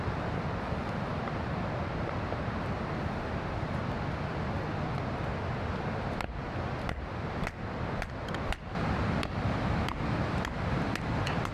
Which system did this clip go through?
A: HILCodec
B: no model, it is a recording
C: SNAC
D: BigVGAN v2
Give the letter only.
B